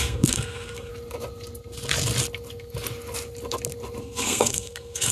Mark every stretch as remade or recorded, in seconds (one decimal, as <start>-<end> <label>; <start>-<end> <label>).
0.0-0.9 remade; 0.9-4.0 recorded; 4.0-5.1 remade